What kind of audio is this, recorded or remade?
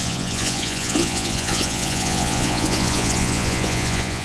remade